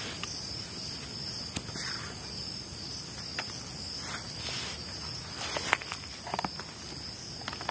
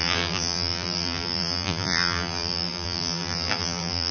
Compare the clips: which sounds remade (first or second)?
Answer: second